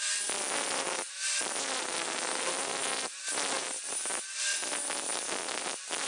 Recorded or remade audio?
recorded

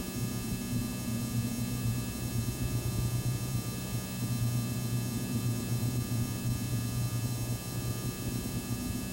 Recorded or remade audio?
remade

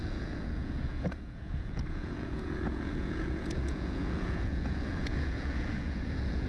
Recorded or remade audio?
remade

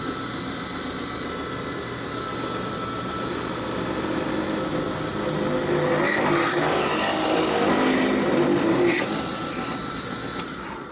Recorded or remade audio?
recorded